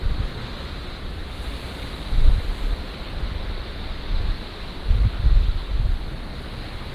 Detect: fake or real real